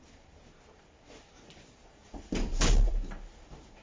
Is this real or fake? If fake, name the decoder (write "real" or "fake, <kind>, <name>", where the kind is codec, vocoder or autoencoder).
fake, vocoder, BigVGAN v2